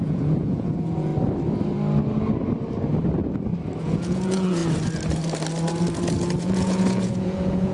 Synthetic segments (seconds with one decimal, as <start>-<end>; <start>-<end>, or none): 0.0-1.1; 3.8-4.6; 6.4-7.7